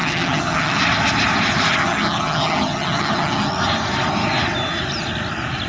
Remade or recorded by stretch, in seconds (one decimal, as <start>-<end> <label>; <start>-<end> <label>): 0.0-0.8 remade; 0.8-1.8 recorded; 1.8-3.5 remade; 3.5-5.7 recorded